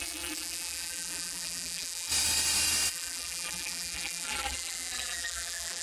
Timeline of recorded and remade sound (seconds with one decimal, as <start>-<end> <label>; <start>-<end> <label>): 0.0-2.1 remade; 2.1-2.9 recorded; 2.9-5.8 remade